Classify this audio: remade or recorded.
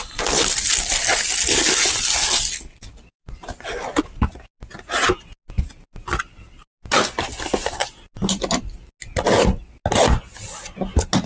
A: recorded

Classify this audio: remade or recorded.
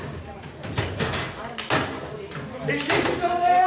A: recorded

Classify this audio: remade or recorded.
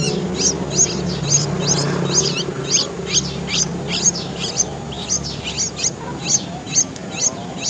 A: recorded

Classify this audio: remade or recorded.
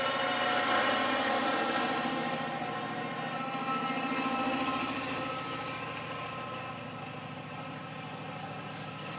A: recorded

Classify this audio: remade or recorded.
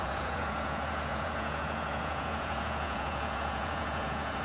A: remade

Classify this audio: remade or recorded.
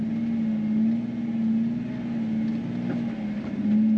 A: recorded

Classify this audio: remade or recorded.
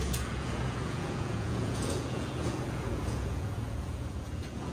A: remade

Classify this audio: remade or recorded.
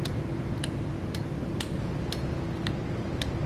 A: recorded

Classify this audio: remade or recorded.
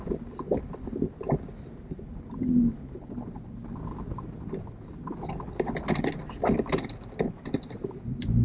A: recorded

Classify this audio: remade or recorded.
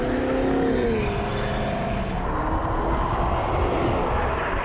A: recorded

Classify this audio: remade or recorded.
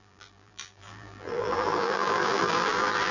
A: remade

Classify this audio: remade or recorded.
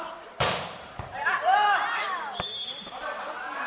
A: remade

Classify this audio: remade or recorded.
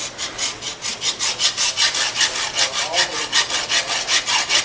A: recorded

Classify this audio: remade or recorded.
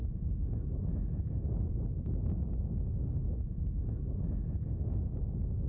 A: recorded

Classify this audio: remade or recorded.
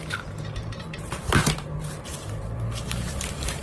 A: remade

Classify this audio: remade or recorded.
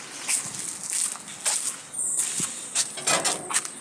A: recorded